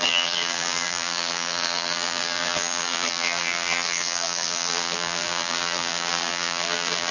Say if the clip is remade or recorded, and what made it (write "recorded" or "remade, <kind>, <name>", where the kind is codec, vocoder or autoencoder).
remade, vocoder, BigVGAN v2